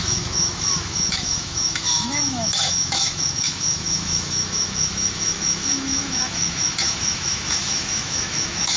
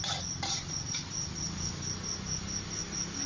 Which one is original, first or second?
second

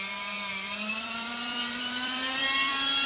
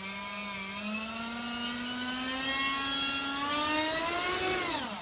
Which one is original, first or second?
second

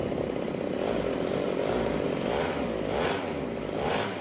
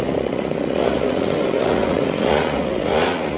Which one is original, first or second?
first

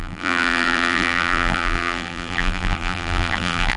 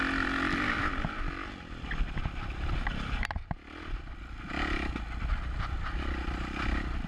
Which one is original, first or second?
second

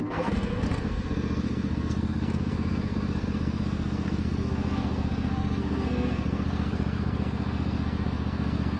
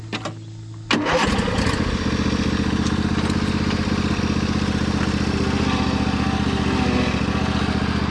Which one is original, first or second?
second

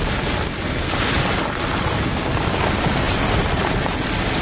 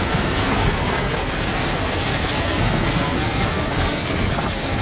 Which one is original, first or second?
first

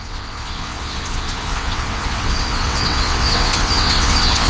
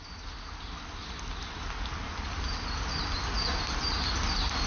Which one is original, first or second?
second